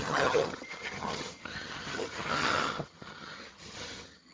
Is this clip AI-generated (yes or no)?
yes